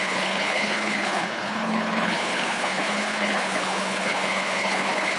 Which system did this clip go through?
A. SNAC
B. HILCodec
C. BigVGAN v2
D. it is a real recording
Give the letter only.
B